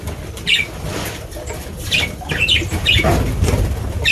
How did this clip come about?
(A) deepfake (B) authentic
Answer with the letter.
A